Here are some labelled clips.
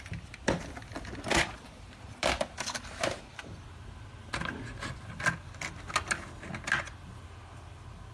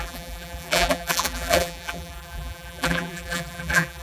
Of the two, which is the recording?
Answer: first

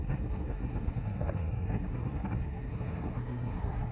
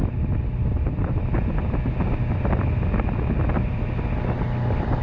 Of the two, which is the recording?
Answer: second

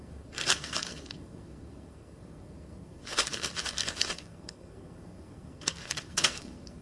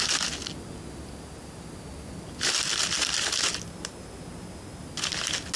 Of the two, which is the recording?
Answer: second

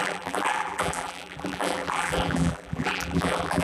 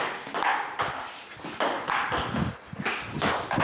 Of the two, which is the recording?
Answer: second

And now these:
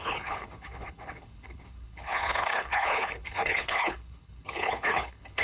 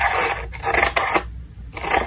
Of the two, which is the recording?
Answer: second